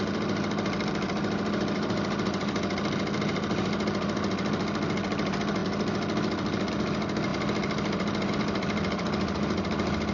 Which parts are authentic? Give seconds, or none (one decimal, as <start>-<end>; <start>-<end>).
0.0-10.1